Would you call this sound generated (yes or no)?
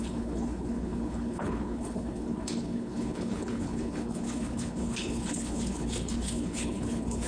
yes